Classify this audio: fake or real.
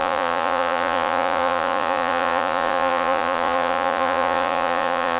fake